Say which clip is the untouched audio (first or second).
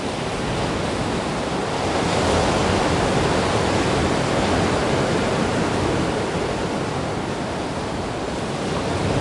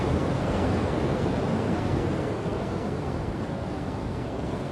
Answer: first